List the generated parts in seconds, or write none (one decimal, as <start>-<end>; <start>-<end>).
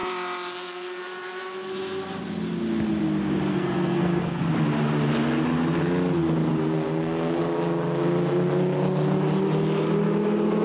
3.5-4.4; 6.5-7.4